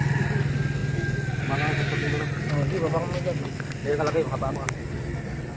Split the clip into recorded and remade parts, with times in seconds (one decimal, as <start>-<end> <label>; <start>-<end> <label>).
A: 0.0-5.6 recorded